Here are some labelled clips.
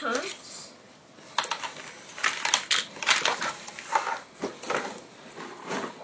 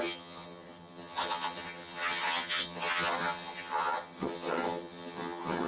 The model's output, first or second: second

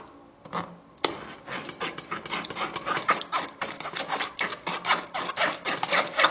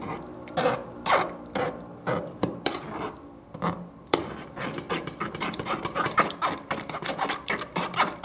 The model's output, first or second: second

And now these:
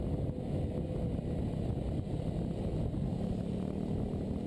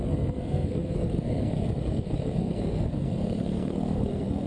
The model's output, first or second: second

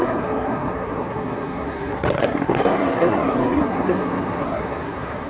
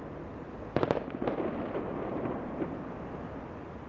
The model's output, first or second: first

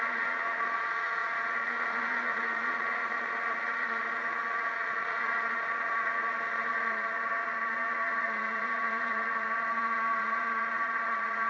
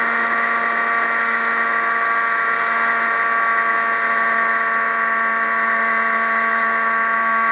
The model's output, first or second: first